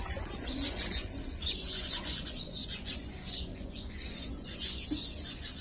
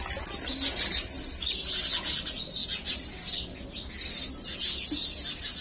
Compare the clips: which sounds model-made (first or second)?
first